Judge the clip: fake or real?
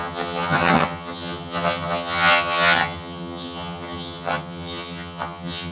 fake